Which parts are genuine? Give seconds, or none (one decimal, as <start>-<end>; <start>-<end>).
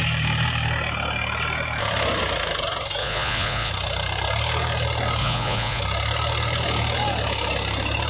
0.0-3.0; 3.7-5.2; 5.8-8.1